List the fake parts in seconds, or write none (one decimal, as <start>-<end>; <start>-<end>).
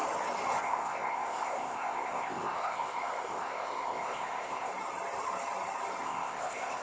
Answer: 0.6-4.7; 6.0-6.8